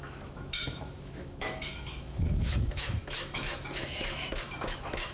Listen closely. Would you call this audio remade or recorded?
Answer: remade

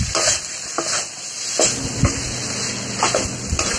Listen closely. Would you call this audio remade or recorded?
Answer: recorded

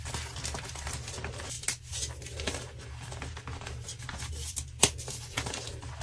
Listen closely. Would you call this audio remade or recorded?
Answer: recorded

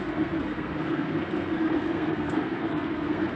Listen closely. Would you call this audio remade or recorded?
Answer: remade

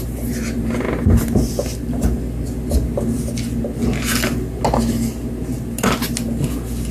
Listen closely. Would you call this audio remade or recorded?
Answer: recorded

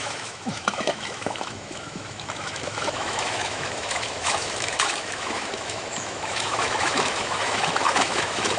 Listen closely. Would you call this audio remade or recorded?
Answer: remade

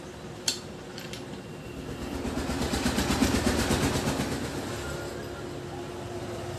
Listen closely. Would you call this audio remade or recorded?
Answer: recorded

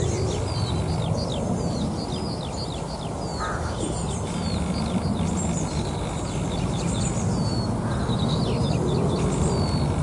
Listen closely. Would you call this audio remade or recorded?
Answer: recorded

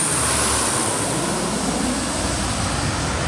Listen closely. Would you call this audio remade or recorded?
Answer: recorded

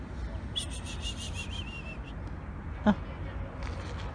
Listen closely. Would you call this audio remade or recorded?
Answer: recorded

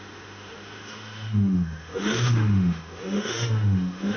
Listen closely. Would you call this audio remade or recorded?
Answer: remade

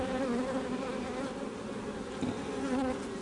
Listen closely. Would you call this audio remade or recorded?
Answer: recorded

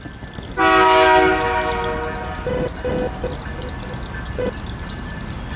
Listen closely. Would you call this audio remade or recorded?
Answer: recorded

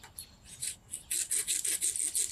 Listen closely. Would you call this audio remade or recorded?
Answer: recorded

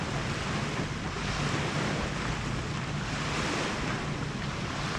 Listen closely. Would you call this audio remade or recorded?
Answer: recorded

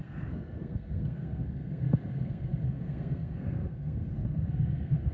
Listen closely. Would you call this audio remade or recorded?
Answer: remade